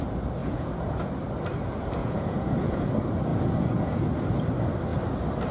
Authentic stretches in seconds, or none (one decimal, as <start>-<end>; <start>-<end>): 0.0-0.4; 1.1-2.0; 2.9-3.3; 4.0-5.5